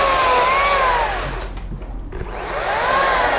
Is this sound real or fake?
real